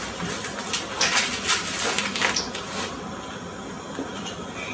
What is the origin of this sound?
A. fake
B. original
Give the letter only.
B